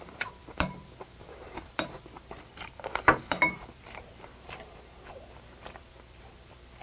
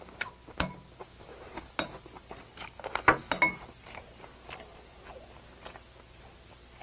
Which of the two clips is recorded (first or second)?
second